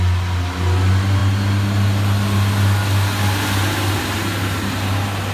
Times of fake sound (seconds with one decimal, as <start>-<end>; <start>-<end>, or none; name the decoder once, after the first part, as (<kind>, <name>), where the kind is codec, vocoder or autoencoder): none